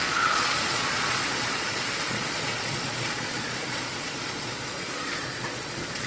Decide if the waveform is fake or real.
fake